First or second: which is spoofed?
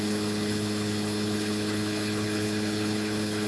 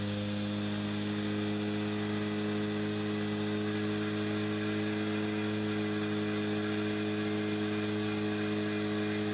first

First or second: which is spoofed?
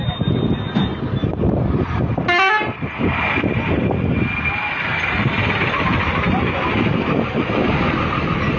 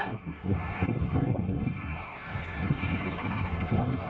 second